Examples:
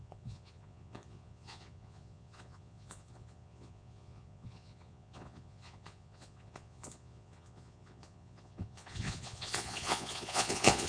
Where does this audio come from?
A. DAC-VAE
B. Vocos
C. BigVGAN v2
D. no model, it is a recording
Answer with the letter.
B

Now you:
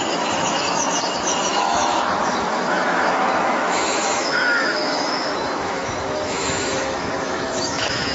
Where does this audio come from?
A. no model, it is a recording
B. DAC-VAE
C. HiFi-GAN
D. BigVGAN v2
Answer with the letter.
B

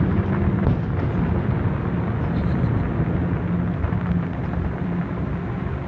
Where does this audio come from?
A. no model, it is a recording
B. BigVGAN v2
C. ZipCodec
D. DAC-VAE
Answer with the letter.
A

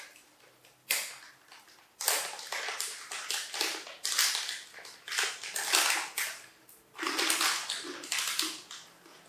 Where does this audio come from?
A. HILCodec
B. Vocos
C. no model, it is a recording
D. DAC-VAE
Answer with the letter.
C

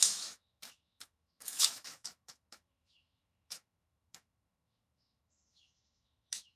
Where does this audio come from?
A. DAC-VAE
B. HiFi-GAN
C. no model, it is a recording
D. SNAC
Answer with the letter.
A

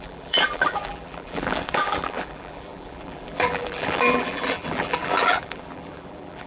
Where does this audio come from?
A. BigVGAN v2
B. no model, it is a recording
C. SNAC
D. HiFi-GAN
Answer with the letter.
A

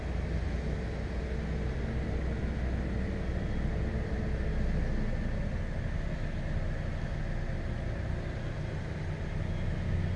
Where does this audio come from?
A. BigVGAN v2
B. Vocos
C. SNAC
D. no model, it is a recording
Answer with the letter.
D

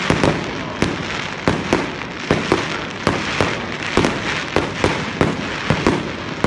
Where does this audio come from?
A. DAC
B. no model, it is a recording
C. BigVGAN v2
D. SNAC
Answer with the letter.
B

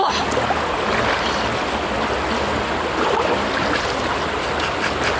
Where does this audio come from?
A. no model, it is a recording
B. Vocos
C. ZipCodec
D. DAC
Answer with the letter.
A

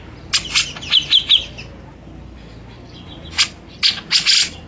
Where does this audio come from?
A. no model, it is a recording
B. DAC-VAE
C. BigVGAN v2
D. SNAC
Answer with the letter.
A